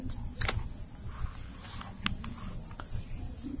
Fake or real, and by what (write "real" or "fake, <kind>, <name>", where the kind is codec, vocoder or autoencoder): real